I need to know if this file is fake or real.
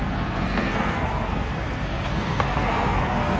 fake